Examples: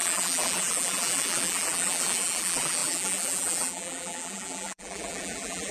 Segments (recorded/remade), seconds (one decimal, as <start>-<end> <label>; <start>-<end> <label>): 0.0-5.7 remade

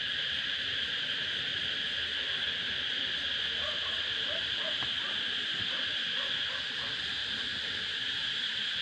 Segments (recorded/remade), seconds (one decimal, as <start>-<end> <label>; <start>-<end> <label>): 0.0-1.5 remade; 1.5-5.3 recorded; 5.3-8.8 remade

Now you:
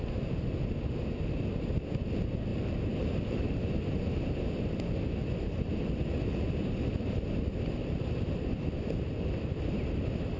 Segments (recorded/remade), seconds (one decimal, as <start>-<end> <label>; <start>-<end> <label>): 0.0-2.5 recorded; 2.5-3.5 remade; 3.5-7.8 recorded; 7.8-8.4 remade; 8.4-10.4 recorded

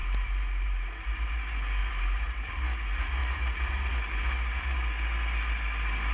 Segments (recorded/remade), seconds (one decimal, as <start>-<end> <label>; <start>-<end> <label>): 0.0-1.3 remade; 1.3-1.8 recorded; 1.8-2.5 remade; 2.5-3.2 recorded; 3.2-3.9 remade; 3.9-6.1 recorded

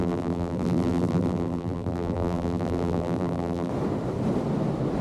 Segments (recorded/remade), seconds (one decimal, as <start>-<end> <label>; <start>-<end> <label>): 0.0-3.7 remade; 3.7-5.0 recorded

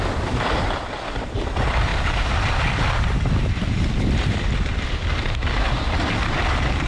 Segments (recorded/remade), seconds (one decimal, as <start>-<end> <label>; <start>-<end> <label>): 0.0-1.9 remade; 1.9-2.4 recorded; 2.4-6.9 remade

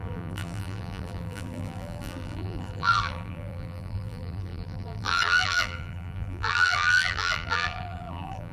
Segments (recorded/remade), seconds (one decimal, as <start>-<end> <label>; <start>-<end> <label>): 0.0-8.5 remade